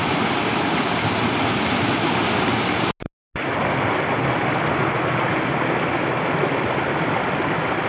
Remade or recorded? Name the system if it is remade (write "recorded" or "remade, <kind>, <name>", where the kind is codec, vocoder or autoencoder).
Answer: recorded